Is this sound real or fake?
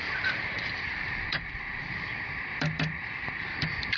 fake